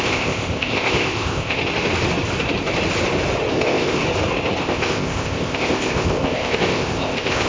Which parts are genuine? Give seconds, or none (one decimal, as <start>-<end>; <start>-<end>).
1.6-3.5; 4.0-4.6